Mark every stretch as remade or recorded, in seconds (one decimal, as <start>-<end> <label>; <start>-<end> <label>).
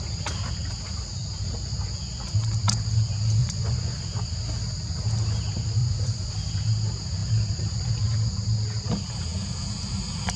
0.0-3.4 recorded; 3.4-4.0 remade; 4.0-5.8 recorded; 5.8-6.3 remade; 6.3-10.4 recorded